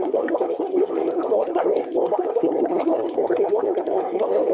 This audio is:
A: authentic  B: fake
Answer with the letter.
B